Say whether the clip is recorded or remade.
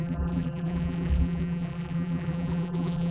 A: remade